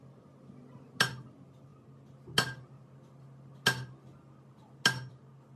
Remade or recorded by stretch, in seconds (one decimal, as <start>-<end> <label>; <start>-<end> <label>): 0.0-5.6 recorded

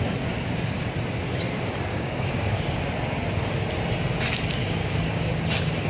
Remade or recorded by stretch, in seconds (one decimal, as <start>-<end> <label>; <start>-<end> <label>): 0.0-1.9 recorded; 1.9-2.8 remade; 2.8-4.6 recorded; 4.6-5.3 remade; 5.3-5.9 recorded

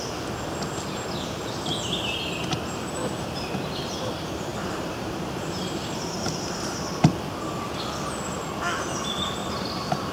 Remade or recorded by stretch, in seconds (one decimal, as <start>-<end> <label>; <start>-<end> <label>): 0.0-3.0 recorded; 3.0-4.0 remade; 4.0-4.5 recorded; 4.5-6.9 remade; 6.9-9.4 recorded; 9.4-10.1 remade

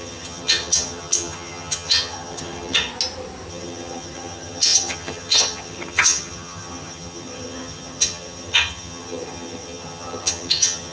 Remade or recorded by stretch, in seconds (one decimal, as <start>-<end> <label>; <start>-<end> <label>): 0.0-2.9 remade; 2.9-3.5 recorded; 3.5-10.9 remade

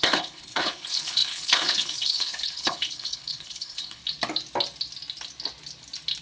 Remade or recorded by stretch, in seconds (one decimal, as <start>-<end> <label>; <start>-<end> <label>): 0.0-4.0 remade; 4.0-6.2 recorded

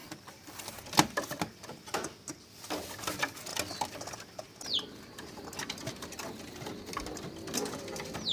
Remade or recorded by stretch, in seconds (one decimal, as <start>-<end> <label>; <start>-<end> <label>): 0.0-0.7 remade; 0.7-8.3 recorded

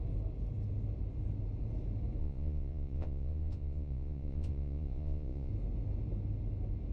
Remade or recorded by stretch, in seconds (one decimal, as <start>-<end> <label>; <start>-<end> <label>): 0.0-2.2 recorded; 2.2-5.5 remade; 5.5-6.9 recorded

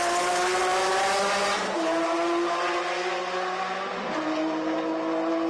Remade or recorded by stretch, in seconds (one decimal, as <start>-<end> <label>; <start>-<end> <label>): 0.0-5.5 recorded